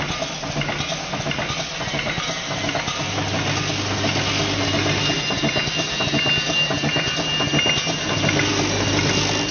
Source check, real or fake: real